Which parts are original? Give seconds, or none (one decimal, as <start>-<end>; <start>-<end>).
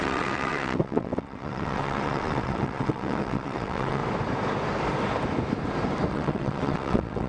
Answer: 4.0-6.1